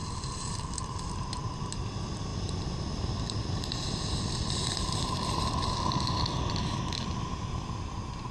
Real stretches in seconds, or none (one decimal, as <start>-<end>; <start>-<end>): 1.1-2.3; 6.5-8.3